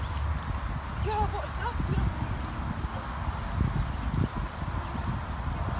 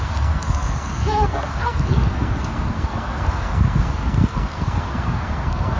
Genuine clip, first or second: first